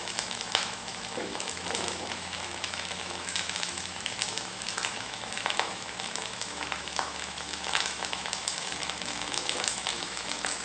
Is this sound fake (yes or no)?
yes